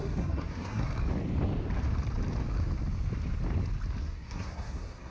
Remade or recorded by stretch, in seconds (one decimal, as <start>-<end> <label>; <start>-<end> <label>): 0.0-0.9 remade; 0.9-4.0 recorded; 4.0-5.1 remade